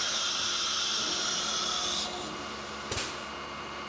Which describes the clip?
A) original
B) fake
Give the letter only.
A